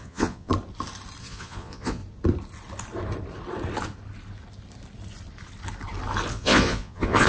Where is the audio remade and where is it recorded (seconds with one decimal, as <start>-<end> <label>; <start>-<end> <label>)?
0.0-0.5 remade; 0.5-1.2 recorded; 1.2-2.0 remade; 2.0-6.3 recorded; 6.3-7.3 remade

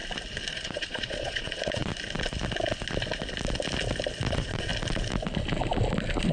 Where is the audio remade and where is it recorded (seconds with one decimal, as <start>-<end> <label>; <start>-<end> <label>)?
0.0-0.5 recorded; 0.5-1.9 remade; 1.9-4.3 recorded; 4.3-4.7 remade; 4.7-6.3 recorded

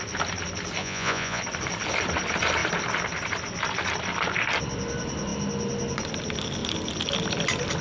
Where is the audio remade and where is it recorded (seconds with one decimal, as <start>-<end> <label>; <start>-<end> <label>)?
0.0-0.8 recorded; 0.8-1.4 remade; 1.4-7.8 recorded

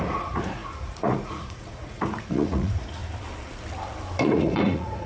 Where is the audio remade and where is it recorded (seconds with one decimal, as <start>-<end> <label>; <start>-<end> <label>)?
0.0-3.0 remade; 3.0-4.2 recorded; 4.2-5.1 remade

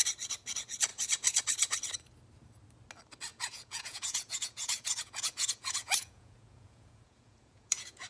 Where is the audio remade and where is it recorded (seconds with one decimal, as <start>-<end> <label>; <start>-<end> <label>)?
0.0-3.3 recorded; 3.3-8.1 remade

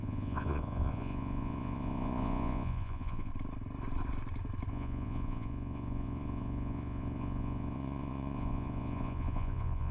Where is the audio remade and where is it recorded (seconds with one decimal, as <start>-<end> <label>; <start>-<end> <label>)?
0.0-3.3 remade; 3.3-4.7 recorded; 4.7-9.9 remade

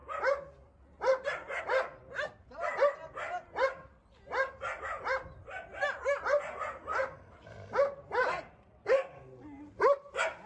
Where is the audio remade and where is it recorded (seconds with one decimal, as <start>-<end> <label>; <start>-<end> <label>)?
0.0-10.5 recorded